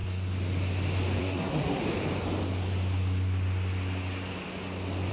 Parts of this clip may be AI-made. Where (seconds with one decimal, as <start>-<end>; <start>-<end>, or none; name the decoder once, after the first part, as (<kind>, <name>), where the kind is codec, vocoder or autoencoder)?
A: 1.2-1.8 (codec, SNAC)